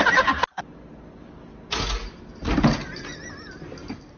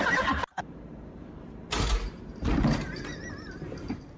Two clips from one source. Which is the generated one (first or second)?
second